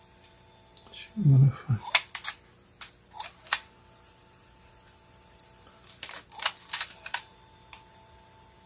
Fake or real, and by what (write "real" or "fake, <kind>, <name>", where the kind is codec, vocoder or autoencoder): real